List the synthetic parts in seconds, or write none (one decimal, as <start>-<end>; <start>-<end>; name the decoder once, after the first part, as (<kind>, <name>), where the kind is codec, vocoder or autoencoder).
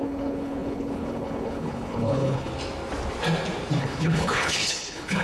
0.0-2.5 (codec, HILCodec); 3.8-5.2